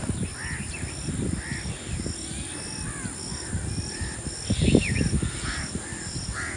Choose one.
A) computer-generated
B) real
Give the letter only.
B